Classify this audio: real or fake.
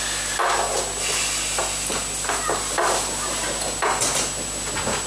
real